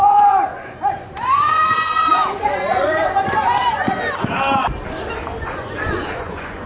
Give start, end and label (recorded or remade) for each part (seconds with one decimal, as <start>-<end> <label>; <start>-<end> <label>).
0.0-4.0 remade; 4.0-5.3 recorded; 5.3-6.7 remade